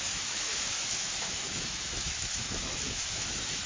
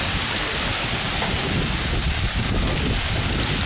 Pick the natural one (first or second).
second